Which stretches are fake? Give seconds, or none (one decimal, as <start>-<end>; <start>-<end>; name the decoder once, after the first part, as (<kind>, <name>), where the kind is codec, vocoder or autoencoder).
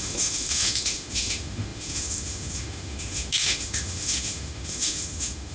0.0-5.5 (autoencoder, DAC-VAE)